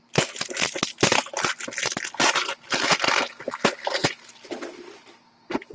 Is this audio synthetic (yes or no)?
no